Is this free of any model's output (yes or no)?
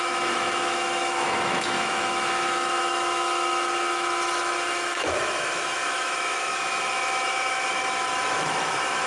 no